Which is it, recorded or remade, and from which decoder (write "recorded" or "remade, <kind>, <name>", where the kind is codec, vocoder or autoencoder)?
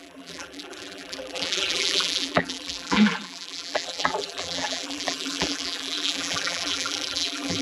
remade, vocoder, BigVGAN v2